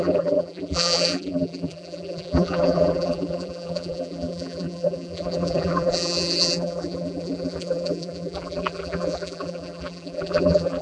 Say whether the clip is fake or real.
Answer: fake